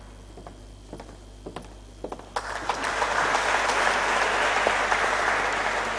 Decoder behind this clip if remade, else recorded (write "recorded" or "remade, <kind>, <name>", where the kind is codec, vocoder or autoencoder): recorded